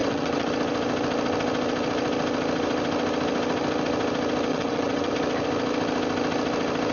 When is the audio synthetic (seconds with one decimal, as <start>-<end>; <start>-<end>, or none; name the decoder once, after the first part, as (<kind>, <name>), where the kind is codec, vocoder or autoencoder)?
0.0-0.5 (vocoder, WaveNeXt); 4.5-5.1

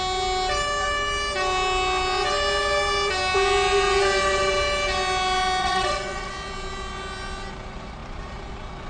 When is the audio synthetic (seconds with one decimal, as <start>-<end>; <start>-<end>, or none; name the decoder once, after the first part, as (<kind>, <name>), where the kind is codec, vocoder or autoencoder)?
5.6-6.3 (vocoder, WaveNeXt)